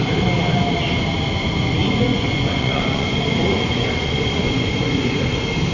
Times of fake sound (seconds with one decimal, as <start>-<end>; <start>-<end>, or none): 1.8-5.2